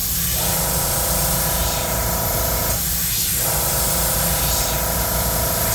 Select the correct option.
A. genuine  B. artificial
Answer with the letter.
A